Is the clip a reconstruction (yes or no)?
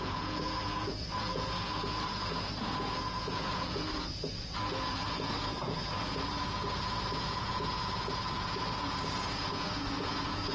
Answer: yes